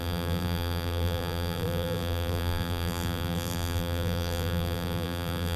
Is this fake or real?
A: fake